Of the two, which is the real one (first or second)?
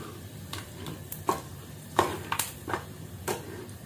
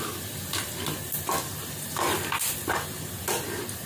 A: second